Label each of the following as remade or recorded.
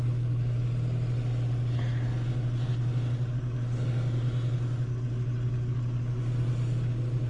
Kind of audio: recorded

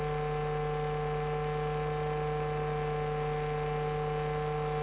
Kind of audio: recorded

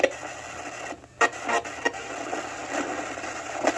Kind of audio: recorded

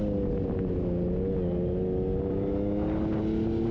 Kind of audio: recorded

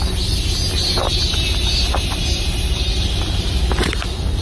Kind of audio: recorded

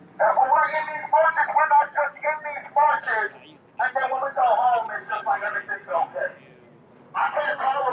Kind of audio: recorded